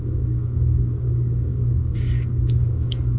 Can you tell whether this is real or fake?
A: fake